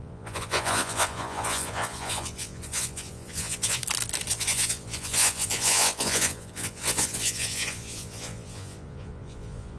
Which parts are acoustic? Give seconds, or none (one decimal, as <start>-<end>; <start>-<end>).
3.8-4.3